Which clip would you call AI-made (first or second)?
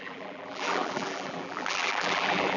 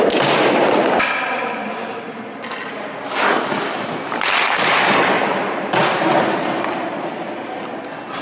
first